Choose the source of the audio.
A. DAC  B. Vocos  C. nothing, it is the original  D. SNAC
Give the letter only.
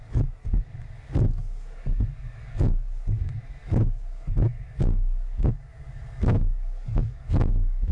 A